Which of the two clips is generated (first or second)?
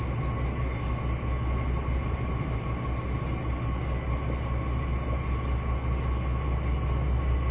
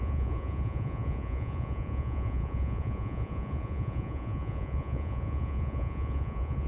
second